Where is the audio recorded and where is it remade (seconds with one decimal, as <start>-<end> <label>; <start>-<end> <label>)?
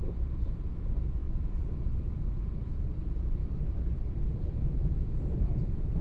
0.0-3.4 remade; 3.4-4.5 recorded; 4.5-6.0 remade